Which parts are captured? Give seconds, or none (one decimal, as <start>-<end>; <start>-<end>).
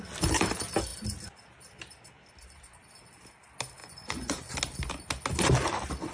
0.0-3.8; 4.5-6.1